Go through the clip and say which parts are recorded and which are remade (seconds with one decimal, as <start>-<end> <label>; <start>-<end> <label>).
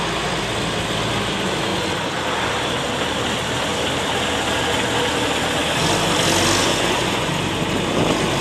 0.0-6.6 recorded; 6.6-7.3 remade; 7.3-8.4 recorded